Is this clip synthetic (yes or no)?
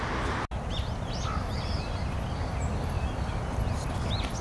no